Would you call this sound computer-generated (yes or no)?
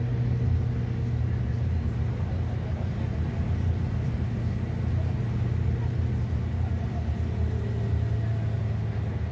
no